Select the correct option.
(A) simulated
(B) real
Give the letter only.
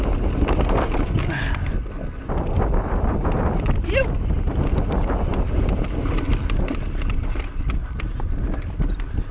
B